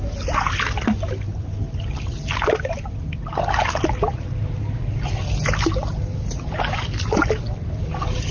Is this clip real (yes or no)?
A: yes